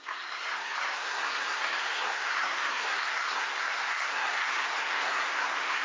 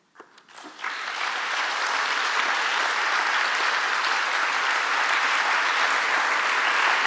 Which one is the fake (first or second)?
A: first